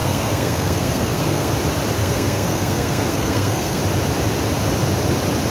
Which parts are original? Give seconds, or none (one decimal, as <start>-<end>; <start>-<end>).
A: 1.5-2.0; 3.8-5.5